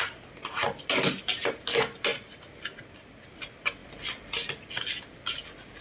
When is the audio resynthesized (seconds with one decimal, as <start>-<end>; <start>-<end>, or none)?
none